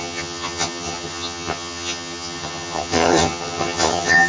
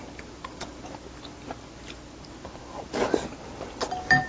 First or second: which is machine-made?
first